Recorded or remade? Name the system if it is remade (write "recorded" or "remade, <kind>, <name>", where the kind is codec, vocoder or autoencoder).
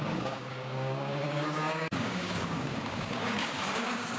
remade, codec, DAC